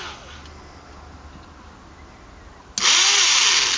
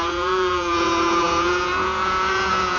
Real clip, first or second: first